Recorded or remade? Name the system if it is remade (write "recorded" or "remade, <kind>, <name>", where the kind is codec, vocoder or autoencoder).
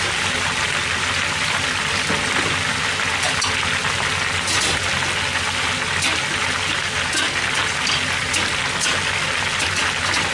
recorded